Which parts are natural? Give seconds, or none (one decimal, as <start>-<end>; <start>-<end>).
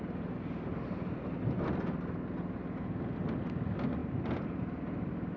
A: 0.0-5.4